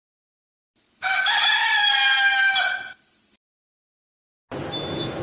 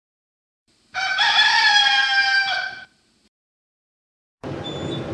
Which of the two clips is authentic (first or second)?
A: first